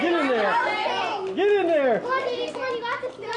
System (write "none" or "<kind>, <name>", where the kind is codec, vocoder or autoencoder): none